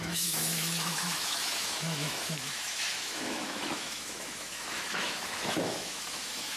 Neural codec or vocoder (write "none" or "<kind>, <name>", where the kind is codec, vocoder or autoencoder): autoencoder, DAC-VAE